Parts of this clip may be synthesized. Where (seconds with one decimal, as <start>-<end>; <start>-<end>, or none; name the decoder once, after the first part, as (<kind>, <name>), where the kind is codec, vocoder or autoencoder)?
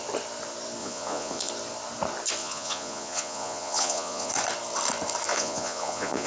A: 0.8-1.5 (vocoder, Vocos); 2.4-4.3; 5.3-6.3